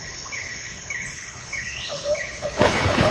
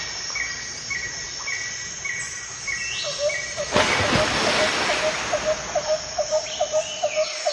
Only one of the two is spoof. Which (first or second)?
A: first